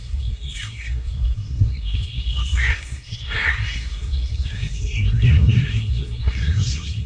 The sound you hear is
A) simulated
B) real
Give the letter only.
A